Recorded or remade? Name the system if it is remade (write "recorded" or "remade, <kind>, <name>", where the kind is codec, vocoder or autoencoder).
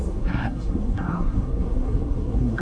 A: remade, codec, SNAC